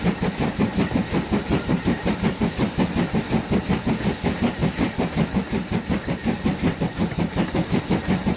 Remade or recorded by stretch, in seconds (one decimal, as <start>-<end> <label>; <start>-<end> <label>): 0.0-1.5 recorded; 1.5-2.1 remade; 2.1-4.6 recorded; 4.6-7.8 remade; 7.8-8.4 recorded

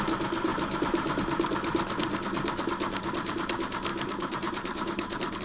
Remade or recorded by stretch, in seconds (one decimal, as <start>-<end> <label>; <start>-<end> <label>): 0.0-3.9 recorded; 3.9-5.4 remade

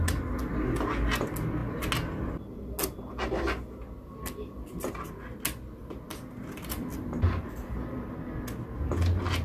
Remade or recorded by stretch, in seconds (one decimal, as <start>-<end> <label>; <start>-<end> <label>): 0.0-5.8 recorded; 5.8-8.1 remade; 8.1-9.4 recorded

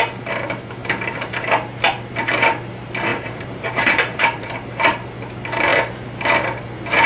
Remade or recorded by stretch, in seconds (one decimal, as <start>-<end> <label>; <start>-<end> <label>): 0.0-3.1 recorded; 3.1-4.5 remade; 4.5-7.1 recorded

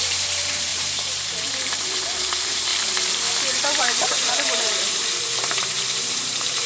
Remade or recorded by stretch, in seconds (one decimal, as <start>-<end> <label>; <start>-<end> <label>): 0.0-2.7 remade; 2.7-3.8 recorded; 3.8-6.7 remade

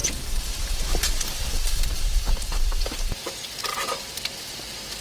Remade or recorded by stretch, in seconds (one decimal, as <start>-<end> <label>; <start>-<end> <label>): 0.0-3.0 remade; 3.0-3.7 recorded; 3.7-4.2 remade; 4.2-5.0 recorded